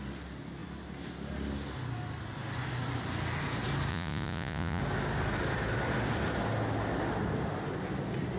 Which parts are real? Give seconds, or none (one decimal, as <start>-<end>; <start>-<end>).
0.0-3.9; 4.8-8.4